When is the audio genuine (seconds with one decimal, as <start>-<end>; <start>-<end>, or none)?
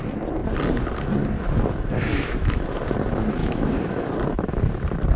0.0-2.1; 2.6-3.4; 4.1-5.2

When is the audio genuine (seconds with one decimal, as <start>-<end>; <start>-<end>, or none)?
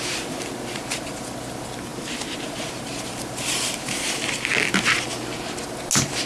0.0-6.3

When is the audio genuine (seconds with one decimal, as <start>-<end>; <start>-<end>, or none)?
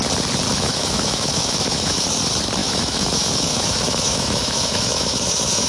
0.0-0.5; 2.0-2.6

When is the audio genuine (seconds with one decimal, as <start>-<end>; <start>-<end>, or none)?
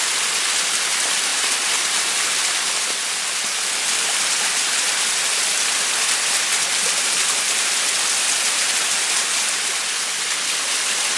0.0-11.2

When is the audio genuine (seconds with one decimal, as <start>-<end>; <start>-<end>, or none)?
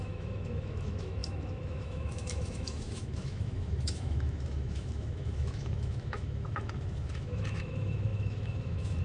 none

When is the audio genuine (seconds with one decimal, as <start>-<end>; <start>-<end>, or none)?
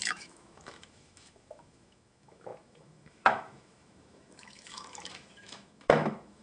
none